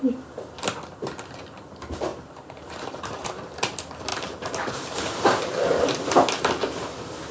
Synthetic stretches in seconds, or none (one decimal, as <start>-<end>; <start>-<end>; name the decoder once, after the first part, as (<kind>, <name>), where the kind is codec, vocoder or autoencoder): 2.1-3.5 (vocoder, BigVGAN v2); 4.1-5.4